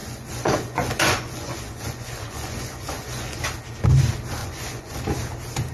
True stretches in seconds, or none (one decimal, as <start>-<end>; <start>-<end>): 3.4-4.4; 5.0-5.7